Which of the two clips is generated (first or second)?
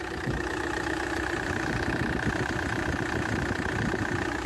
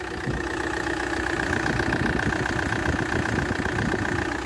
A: first